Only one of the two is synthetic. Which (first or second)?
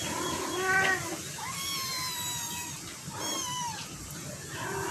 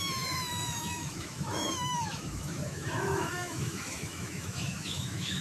second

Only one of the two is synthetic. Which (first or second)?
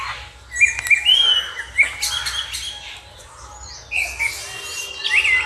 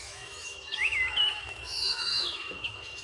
second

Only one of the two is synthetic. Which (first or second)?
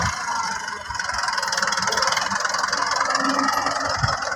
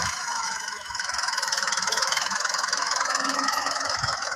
second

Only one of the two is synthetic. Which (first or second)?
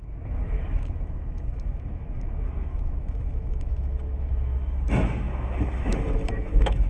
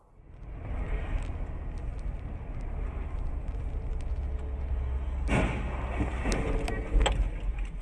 first